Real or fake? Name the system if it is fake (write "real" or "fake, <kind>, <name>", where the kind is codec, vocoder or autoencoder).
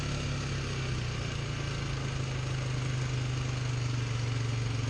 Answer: real